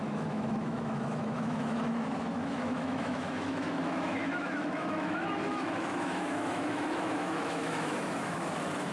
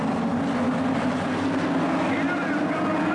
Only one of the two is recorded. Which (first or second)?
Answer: second